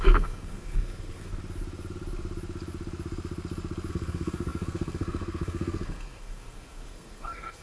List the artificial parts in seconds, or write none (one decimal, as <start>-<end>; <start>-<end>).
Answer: 0.0-1.3; 3.9-7.6